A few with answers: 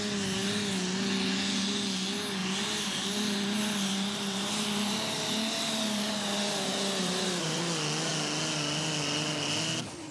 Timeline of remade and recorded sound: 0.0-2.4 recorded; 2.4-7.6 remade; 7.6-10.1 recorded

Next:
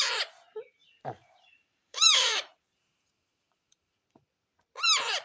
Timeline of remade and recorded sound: 0.0-0.8 recorded; 0.8-3.9 remade; 3.9-5.2 recorded

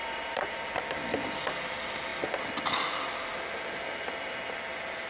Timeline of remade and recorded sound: 0.0-0.6 remade; 0.6-5.1 recorded